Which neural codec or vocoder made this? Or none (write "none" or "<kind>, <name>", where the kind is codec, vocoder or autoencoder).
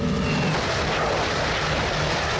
none